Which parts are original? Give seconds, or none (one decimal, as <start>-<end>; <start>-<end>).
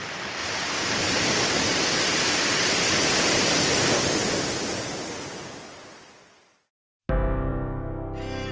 0.0-8.5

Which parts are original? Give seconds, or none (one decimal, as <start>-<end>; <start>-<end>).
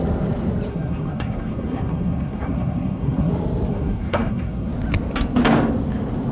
0.0-0.7; 3.3-3.7; 4.7-6.3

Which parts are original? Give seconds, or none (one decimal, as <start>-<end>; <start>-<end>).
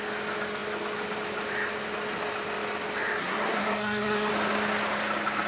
0.0-3.2; 4.3-5.5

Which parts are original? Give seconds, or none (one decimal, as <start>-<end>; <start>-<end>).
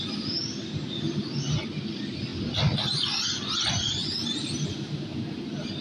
0.0-5.8